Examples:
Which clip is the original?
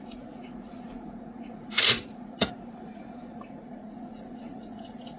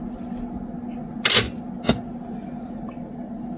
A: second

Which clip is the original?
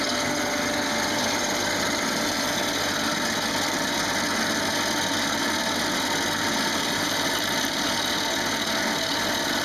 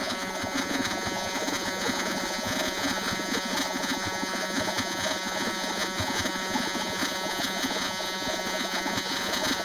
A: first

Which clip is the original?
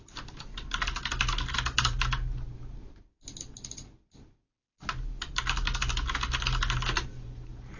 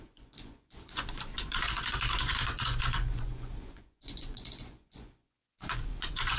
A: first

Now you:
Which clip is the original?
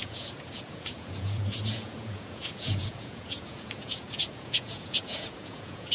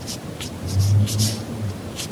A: second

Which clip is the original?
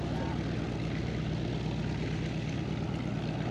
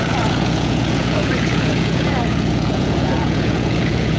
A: first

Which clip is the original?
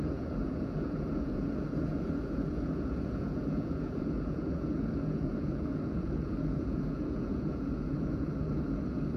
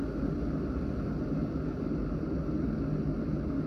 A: second